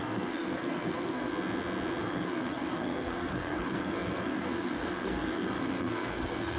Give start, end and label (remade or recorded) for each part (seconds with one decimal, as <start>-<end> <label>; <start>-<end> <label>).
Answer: 0.0-1.3 remade; 1.3-2.0 recorded; 2.0-6.6 remade